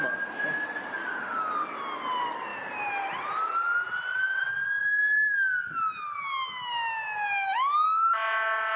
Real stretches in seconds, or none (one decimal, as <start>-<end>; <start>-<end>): 0.0-8.8